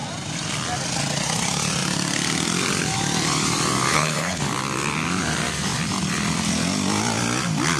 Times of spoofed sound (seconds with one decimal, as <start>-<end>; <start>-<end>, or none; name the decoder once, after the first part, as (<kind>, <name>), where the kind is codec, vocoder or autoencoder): 3.9-4.4 (codec, HILCodec)